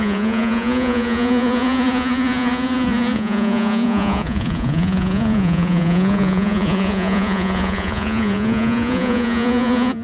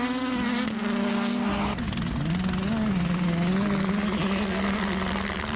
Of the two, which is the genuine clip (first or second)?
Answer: second